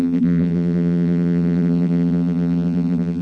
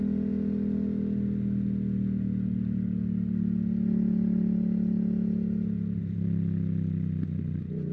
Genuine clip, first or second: second